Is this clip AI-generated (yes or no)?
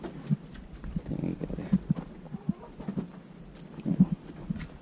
no